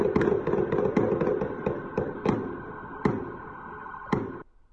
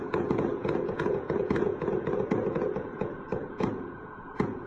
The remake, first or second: second